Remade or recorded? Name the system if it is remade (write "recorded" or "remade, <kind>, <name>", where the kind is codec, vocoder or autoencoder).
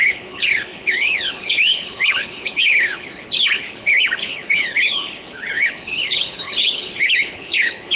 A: remade, codec, HILCodec